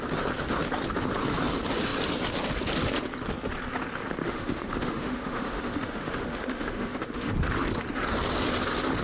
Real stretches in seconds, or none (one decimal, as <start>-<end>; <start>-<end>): 0.0-4.2; 7.3-9.0